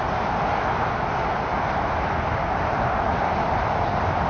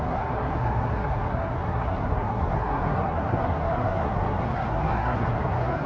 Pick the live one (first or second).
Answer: first